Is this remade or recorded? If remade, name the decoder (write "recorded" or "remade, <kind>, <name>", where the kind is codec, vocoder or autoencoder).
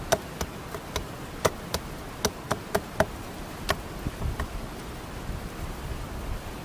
recorded